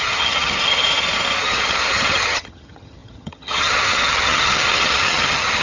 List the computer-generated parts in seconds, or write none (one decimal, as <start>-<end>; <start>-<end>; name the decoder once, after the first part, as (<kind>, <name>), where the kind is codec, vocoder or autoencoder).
0.0-0.8 (vocoder, HiFi-GAN); 1.4-5.6